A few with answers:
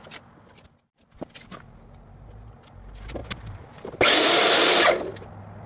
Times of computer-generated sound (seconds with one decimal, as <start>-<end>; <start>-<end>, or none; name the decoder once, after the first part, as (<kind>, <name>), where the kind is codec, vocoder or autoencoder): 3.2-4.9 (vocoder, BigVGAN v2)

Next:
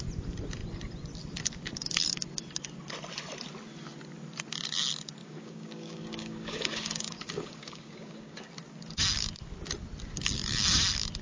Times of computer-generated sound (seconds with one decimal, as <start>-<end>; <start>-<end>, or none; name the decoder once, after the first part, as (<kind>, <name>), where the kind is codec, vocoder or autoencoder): 5.2-8.5 (codec, DAC)

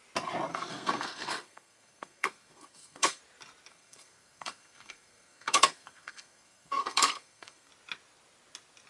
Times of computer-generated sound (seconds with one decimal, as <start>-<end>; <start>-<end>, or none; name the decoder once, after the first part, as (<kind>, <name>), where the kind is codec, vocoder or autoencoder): 0.5-3.2 (codec, SNAC); 3.7-7.7

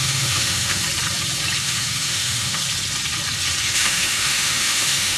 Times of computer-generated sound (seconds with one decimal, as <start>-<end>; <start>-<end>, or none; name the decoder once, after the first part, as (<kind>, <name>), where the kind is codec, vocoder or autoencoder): 0.0-0.8 (autoencoder, DAC-VAE); 1.6-2.6; 3.6-5.2

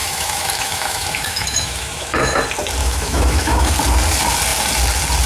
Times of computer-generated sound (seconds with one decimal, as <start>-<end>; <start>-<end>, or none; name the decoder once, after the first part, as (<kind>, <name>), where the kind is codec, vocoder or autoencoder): 0.0-2.4 (autoencoder, DAC-VAE); 2.8-3.7

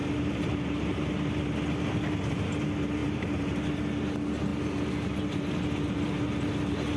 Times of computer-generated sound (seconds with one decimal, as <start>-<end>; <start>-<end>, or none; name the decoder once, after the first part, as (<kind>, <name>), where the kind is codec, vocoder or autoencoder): 0.0-1.1 (vocoder, BigVGAN v2); 3.0-3.8

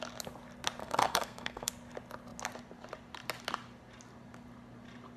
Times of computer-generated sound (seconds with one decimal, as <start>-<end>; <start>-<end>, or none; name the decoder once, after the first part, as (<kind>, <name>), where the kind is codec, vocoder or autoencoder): 0.8-1.7 (codec, SNAC)